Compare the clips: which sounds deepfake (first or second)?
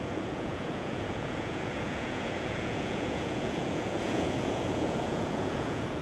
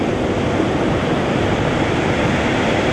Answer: first